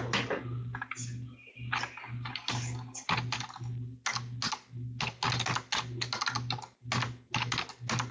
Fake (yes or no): no